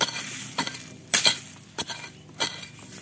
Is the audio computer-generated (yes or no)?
no